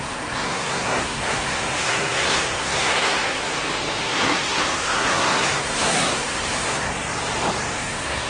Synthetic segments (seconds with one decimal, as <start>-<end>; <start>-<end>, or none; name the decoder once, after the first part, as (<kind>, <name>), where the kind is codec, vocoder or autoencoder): 0.0-3.5 (codec, SNAC); 4.0-6.9; 7.7-8.3